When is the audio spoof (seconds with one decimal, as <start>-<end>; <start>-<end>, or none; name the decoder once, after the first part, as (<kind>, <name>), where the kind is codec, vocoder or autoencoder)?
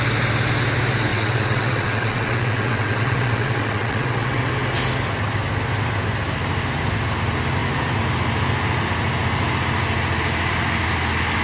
1.1-4.4 (vocoder, WaveNeXt)